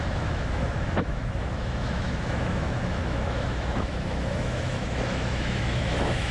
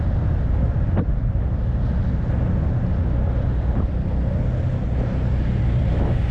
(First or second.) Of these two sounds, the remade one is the first